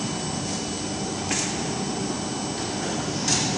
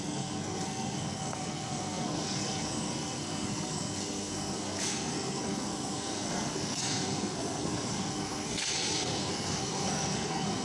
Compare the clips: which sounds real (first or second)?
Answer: first